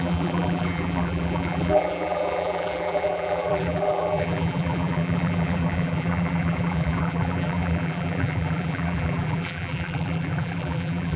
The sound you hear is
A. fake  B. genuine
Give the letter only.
A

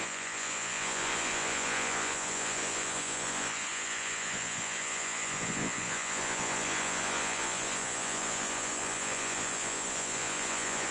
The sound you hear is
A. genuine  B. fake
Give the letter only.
B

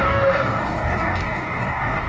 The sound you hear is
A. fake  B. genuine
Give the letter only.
A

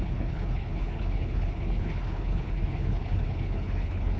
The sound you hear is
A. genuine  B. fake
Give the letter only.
B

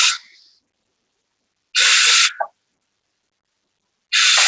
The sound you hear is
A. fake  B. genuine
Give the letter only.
B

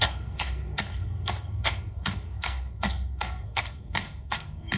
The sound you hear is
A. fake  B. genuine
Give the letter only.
A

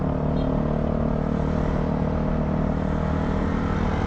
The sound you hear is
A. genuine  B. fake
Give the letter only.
A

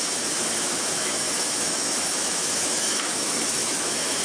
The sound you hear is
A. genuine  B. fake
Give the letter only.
B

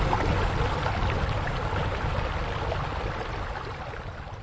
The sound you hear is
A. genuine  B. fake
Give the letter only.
A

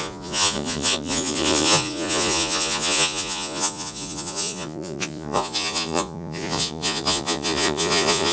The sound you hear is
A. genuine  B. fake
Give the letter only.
B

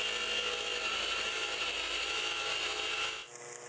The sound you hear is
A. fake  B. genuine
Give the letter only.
B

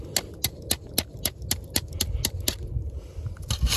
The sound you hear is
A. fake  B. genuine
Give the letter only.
B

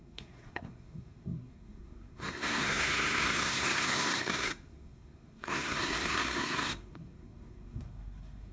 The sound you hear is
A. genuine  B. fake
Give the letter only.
B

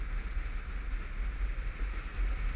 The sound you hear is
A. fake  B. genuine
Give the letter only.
B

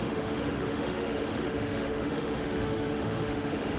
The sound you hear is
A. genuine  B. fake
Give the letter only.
B